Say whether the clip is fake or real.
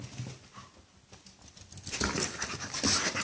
real